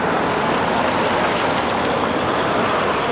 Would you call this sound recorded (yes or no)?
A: yes